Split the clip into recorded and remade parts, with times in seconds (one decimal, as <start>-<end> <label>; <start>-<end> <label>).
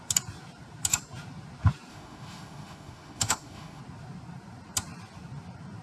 0.0-1.9 recorded; 1.9-3.8 remade; 3.8-5.8 recorded